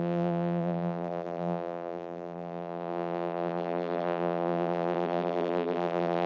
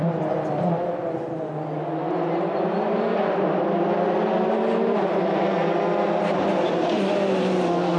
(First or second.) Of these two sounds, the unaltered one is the second